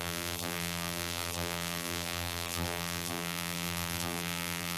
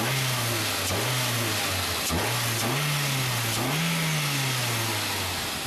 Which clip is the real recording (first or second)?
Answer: second